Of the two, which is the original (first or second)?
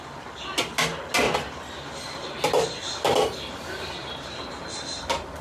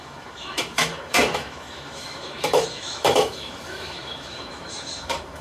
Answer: first